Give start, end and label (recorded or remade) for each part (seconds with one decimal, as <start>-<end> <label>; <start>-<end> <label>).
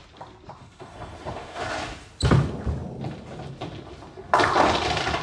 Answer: 0.0-0.6 recorded; 0.6-1.6 remade; 1.6-5.2 recorded